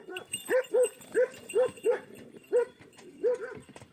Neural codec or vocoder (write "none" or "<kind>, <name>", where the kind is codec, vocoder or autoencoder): vocoder, BigVGAN v2